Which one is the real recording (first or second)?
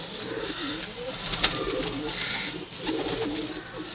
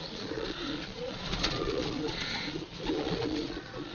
first